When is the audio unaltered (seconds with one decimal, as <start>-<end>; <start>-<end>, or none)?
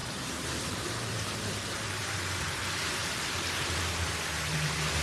2.6-3.0; 4.2-5.0